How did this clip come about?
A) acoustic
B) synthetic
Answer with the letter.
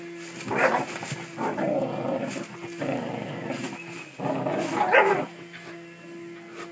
A